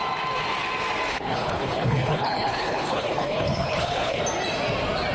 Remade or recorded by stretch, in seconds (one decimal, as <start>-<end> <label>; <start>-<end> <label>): 0.0-1.1 recorded; 1.1-4.2 remade; 4.2-5.1 recorded